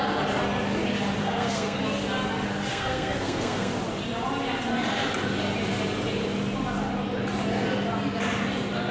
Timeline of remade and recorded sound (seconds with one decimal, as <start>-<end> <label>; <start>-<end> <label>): 0.0-1.2 recorded; 1.2-1.8 remade; 1.8-2.7 recorded; 2.7-3.7 remade; 3.7-8.9 recorded